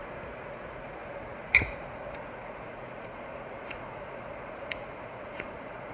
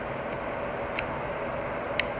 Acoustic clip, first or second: second